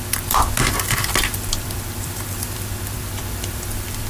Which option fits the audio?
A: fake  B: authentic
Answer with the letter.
A